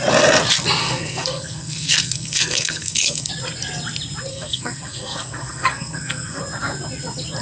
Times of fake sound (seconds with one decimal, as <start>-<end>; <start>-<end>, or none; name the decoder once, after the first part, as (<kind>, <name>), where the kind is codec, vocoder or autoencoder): 0.8-3.3 (codec, SNAC); 4.3-6.4